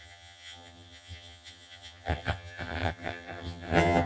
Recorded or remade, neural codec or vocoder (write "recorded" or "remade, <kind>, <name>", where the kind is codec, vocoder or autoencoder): remade, vocoder, HiFi-GAN